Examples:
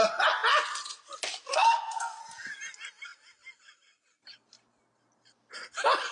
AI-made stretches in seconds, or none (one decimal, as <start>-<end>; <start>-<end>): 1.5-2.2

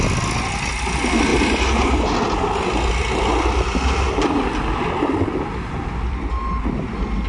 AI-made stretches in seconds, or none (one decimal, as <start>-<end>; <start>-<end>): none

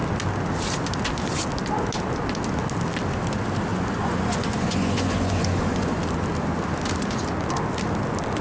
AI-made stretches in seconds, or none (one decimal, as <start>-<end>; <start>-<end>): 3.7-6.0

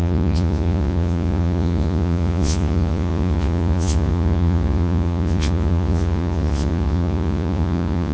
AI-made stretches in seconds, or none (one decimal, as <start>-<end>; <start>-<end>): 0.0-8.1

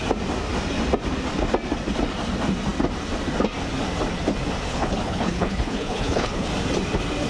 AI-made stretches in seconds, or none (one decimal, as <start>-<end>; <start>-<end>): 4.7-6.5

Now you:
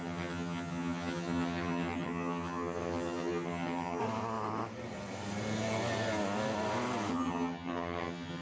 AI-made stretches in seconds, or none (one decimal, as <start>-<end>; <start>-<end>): 0.0-4.0; 7.1-8.4

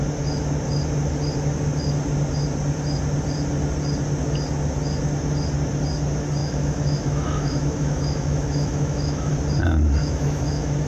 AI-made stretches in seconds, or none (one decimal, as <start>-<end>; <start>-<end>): 6.4-9.3; 10.0-10.9

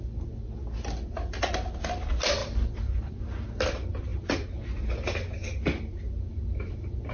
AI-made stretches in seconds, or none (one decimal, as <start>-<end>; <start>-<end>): 2.4-3.2